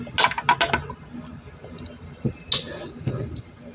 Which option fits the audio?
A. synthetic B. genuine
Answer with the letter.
B